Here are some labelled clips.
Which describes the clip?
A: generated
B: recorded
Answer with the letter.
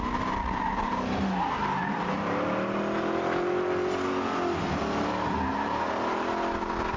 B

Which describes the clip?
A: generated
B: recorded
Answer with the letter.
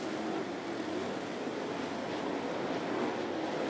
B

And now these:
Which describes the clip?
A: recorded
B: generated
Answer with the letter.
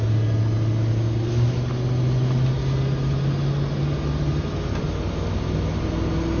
A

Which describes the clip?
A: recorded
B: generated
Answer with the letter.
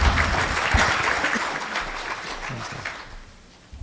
A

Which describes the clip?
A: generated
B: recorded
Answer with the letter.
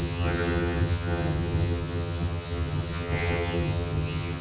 A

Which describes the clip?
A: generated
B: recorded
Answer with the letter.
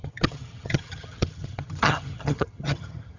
A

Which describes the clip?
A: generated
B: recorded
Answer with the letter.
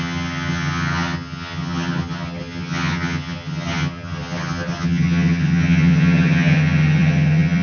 A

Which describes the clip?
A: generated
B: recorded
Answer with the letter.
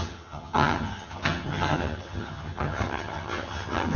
A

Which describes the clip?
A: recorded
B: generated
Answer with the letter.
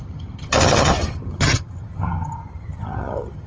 B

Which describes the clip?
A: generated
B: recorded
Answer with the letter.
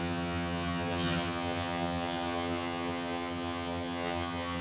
A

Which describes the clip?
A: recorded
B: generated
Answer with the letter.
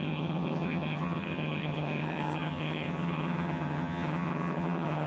B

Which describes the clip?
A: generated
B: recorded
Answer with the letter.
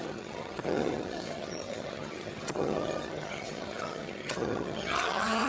A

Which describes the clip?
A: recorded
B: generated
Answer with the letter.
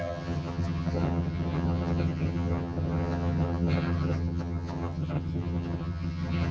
B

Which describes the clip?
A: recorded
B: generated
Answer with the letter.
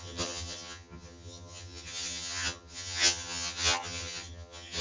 B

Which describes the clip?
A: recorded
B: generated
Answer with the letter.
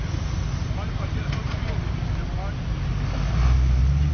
A